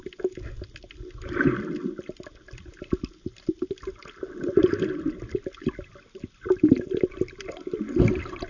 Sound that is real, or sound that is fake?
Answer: real